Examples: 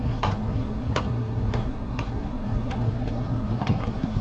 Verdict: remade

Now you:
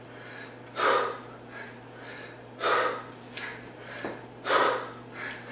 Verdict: recorded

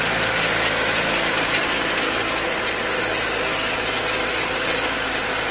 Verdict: recorded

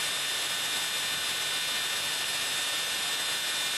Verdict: recorded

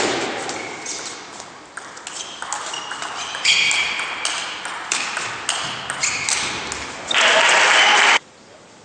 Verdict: recorded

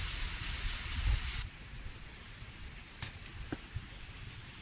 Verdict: recorded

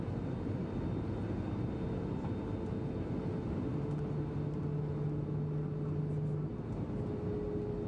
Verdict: recorded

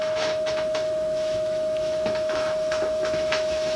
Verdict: remade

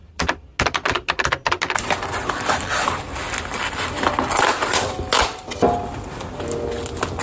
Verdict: recorded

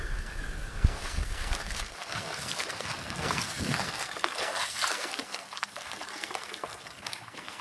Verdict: remade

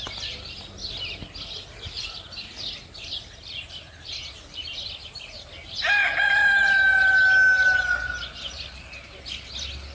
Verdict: recorded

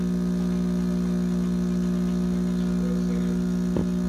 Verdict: recorded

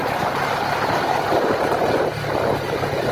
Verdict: remade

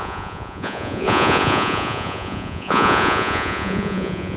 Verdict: remade